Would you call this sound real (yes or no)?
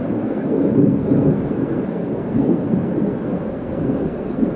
no